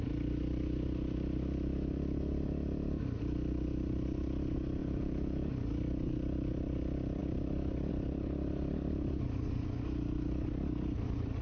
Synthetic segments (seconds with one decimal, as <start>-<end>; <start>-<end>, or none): 4.8-5.5